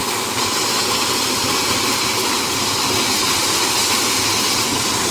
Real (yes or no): yes